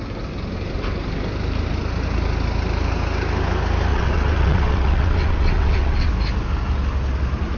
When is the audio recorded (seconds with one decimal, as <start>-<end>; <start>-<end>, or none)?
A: 0.0-3.9; 6.1-7.6